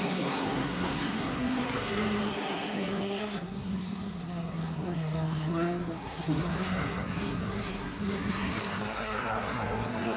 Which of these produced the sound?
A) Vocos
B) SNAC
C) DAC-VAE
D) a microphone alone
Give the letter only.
B